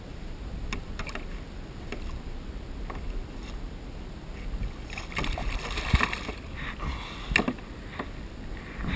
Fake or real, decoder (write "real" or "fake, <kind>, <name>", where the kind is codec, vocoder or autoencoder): real